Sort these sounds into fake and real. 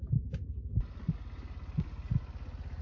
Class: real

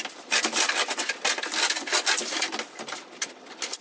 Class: real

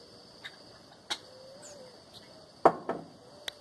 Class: real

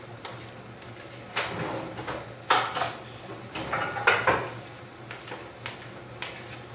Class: real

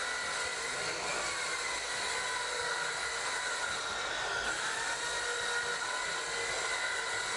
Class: real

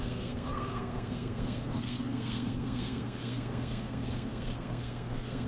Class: fake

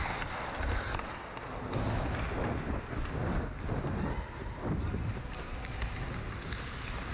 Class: real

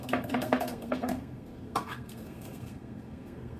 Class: fake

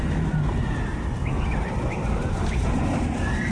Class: real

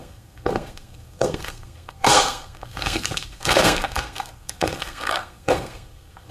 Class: fake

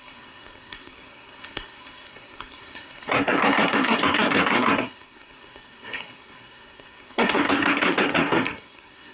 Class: fake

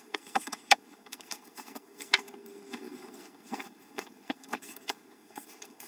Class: fake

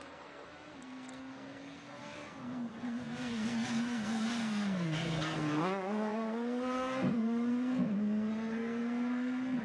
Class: fake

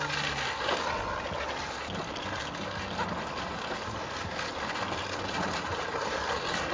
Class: real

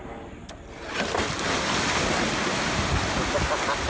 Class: real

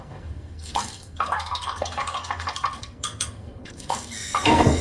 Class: fake